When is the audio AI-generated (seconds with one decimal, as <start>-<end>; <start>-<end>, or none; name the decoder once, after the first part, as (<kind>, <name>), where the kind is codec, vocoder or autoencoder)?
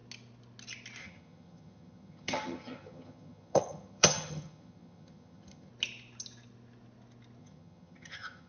1.0-5.7 (vocoder, HiFi-GAN); 7.4-8.5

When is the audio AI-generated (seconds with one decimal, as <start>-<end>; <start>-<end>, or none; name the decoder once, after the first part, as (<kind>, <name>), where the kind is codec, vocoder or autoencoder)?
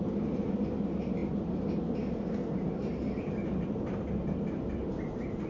none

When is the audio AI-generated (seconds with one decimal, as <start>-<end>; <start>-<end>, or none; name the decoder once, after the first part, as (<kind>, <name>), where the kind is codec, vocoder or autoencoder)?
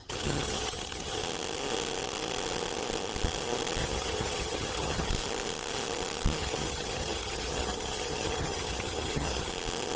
0.0-1.2 (vocoder, HiFi-GAN); 3.8-5.1; 6.4-9.5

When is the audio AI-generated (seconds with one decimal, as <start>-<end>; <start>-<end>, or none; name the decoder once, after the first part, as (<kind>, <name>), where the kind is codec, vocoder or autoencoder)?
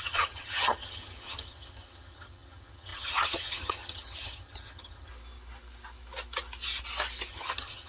0.0-5.1 (vocoder, HiFi-GAN); 7.3-7.9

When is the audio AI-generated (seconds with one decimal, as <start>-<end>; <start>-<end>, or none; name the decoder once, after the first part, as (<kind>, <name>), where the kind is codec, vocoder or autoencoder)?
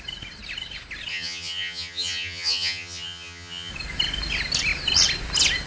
1.1-3.7 (vocoder, HiFi-GAN)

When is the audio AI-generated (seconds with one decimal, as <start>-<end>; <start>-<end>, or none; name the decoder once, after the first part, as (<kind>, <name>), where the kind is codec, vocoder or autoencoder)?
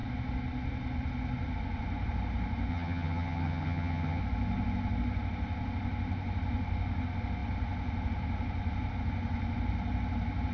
2.7-4.2 (vocoder, HiFi-GAN)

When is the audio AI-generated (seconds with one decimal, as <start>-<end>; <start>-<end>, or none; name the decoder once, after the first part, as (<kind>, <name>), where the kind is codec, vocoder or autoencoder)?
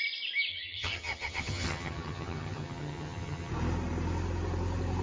0.5-3.5 (vocoder, HiFi-GAN)